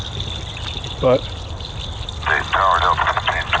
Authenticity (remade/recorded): recorded